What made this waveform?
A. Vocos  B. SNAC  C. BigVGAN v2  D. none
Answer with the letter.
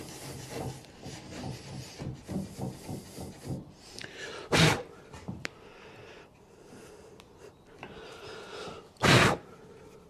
D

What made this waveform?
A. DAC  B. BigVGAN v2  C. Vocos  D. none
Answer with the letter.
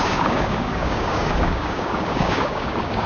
A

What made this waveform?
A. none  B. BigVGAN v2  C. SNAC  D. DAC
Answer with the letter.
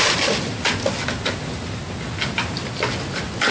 A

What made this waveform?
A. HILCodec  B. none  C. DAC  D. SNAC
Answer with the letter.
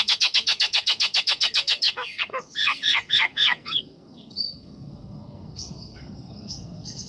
D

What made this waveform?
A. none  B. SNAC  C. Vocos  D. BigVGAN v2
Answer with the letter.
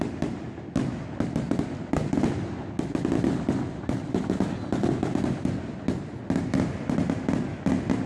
A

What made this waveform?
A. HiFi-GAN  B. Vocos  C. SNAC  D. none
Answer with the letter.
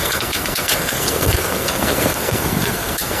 C